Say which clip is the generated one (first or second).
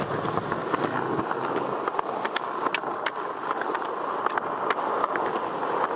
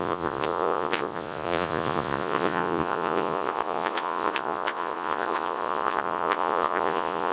second